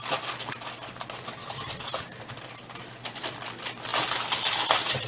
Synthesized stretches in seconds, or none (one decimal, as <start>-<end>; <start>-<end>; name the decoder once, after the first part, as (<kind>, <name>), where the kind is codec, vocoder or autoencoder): 1.4-2.3 (vocoder, BigVGAN v2)